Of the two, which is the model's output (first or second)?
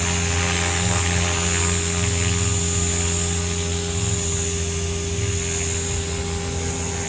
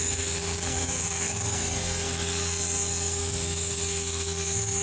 second